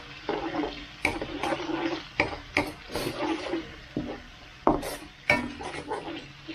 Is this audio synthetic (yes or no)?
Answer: no